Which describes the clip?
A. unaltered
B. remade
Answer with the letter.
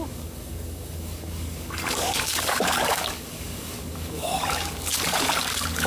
B